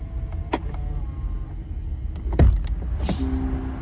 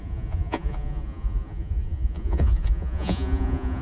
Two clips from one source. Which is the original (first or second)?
first